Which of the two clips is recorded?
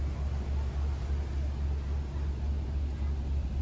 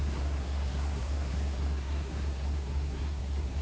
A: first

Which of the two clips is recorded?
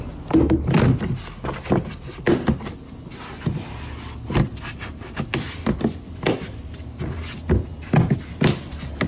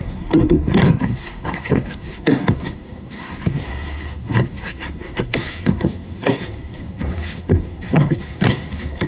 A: first